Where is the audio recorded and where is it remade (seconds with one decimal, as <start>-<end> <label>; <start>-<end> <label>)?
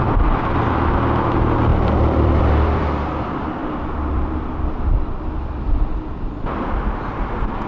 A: 0.0-1.7 recorded; 1.7-2.8 remade; 2.8-3.6 recorded; 3.6-5.2 remade; 5.2-7.7 recorded